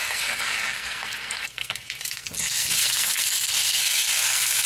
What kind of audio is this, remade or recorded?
remade